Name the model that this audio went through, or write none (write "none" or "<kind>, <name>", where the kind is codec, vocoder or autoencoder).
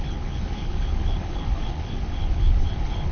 codec, HILCodec